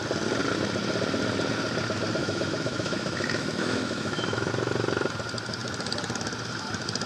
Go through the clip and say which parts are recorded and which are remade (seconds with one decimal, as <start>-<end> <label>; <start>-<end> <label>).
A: 0.0-2.2 recorded; 2.2-4.5 remade; 4.5-7.1 recorded